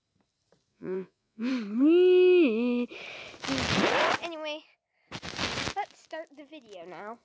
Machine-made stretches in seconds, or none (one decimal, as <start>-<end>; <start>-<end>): 0.7-1.5